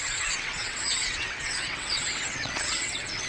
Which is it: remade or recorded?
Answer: remade